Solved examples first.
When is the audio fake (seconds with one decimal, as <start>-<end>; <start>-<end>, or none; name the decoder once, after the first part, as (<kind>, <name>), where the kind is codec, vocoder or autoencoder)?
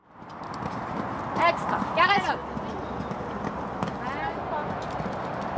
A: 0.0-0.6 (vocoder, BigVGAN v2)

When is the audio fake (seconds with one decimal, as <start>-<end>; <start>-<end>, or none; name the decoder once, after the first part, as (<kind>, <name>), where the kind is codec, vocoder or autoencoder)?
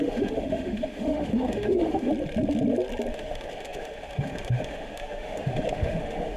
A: 0.0-2.1 (autoencoder, DAC-VAE); 3.1-6.4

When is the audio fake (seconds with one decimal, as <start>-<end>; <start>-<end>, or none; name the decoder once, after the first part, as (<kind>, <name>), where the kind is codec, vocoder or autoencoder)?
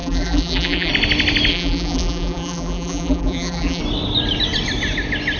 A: 0.0-0.9 (vocoder, BigVGAN v2); 1.5-3.8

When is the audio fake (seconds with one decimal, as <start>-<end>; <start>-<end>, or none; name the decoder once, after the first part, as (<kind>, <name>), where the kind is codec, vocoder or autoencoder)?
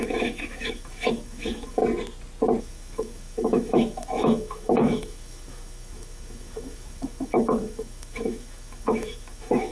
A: 0.0-1.8 (autoencoder, DAC-VAE); 2.6-9.7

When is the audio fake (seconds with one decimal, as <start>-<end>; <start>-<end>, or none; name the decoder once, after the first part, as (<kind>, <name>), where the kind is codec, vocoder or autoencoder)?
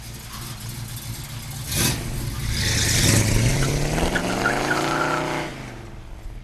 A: 3.5-4.2 (vocoder, BigVGAN v2)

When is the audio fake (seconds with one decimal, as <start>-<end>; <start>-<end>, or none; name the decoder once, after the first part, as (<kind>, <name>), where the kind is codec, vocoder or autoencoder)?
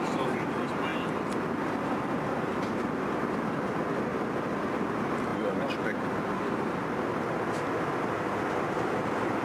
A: 5.3-8.1 (vocoder, BigVGAN v2)